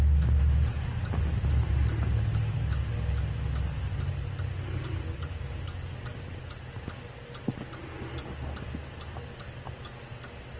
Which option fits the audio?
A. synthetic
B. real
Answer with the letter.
B